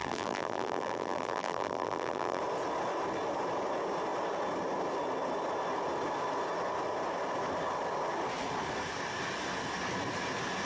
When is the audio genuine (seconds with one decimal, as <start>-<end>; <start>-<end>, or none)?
2.4-10.7